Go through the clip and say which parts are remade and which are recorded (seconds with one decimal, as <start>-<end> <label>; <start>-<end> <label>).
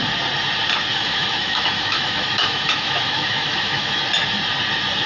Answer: 0.0-0.9 recorded; 0.9-4.0 remade; 4.0-5.1 recorded